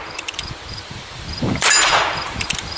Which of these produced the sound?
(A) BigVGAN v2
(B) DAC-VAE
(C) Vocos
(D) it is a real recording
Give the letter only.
A